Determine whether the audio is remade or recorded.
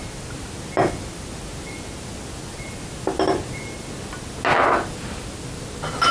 recorded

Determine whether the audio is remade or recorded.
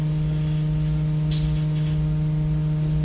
recorded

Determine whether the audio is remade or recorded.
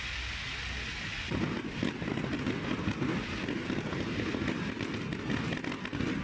recorded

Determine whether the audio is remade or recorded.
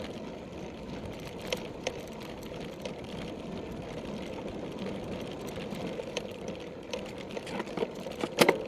remade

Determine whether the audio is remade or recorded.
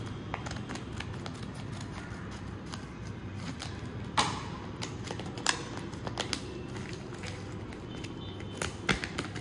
recorded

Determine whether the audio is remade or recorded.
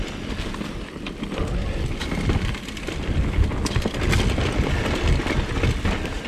recorded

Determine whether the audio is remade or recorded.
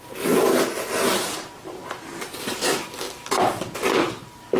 recorded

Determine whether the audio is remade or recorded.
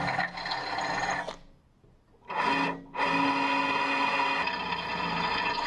recorded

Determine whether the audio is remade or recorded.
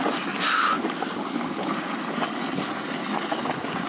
recorded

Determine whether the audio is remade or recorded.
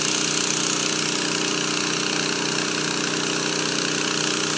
recorded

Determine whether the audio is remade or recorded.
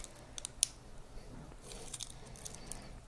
recorded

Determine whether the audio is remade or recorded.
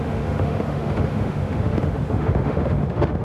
remade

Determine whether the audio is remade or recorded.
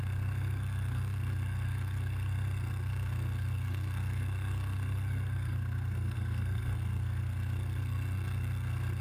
remade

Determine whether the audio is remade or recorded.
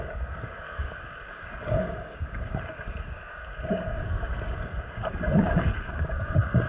remade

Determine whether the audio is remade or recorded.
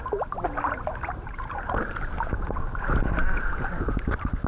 recorded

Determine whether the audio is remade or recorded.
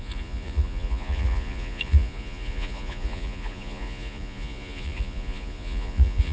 remade